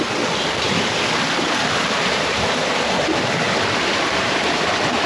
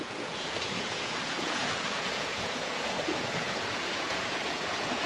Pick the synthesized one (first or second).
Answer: second